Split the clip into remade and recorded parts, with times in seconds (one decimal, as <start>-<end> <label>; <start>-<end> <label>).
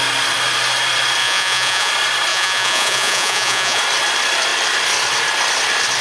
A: 0.0-1.2 recorded; 1.2-1.9 remade; 1.9-2.3 recorded; 2.3-3.8 remade; 3.8-6.0 recorded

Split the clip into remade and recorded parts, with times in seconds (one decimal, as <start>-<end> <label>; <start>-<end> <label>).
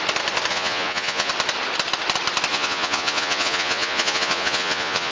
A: 0.0-0.5 recorded; 0.5-1.3 remade; 1.3-2.5 recorded; 2.5-5.1 remade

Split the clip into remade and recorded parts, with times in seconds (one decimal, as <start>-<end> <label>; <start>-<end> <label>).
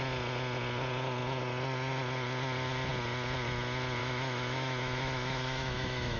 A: 0.0-4.0 recorded; 4.0-6.2 remade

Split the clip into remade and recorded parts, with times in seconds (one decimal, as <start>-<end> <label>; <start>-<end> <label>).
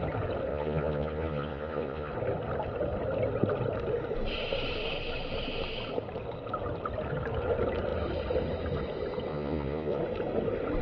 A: 0.0-0.5 recorded; 0.5-2.1 remade; 2.1-9.3 recorded; 9.3-10.0 remade; 10.0-10.8 recorded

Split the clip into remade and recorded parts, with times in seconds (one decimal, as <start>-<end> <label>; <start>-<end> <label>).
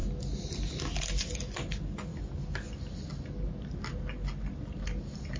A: 0.0-5.4 recorded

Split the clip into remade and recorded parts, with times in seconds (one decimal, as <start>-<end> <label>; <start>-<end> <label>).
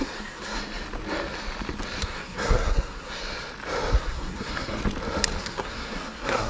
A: 0.0-0.6 remade; 0.6-2.0 recorded; 2.0-3.2 remade; 3.2-4.0 recorded; 4.0-4.8 remade; 4.8-5.4 recorded; 5.4-6.5 remade